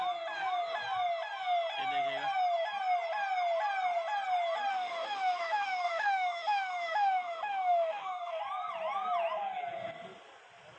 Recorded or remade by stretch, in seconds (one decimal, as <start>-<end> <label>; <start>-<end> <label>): 0.0-4.7 recorded; 4.7-8.4 remade; 8.4-10.8 recorded